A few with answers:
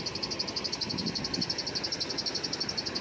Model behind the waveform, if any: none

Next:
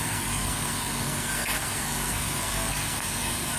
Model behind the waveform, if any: codec, SNAC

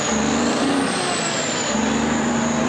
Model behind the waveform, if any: vocoder, BigVGAN v2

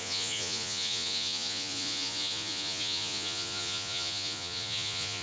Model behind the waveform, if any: vocoder, Vocos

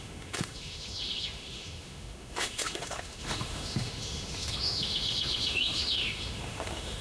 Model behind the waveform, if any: autoencoder, DAC-VAE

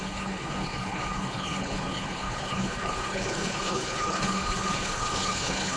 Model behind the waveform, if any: codec, HILCodec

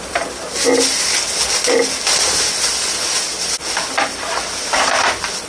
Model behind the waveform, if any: vocoder, BigVGAN v2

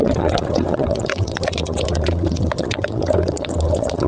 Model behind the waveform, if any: vocoder, WaveNeXt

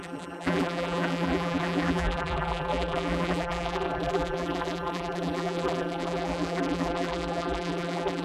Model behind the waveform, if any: vocoder, BigVGAN v2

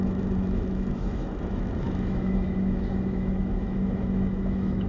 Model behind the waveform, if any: autoencoder, DAC-VAE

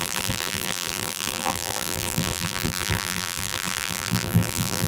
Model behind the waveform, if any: vocoder, BigVGAN v2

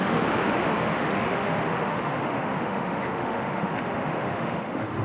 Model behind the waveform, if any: autoencoder, DAC-VAE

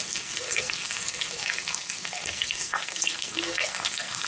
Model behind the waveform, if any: codec, SNAC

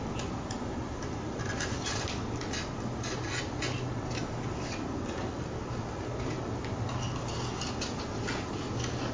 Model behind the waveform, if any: none